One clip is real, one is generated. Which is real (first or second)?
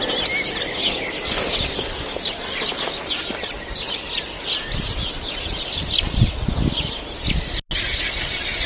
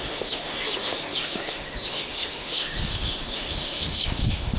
first